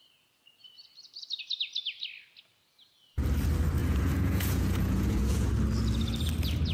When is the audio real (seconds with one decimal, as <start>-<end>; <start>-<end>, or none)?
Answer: 0.0-3.8; 5.5-6.7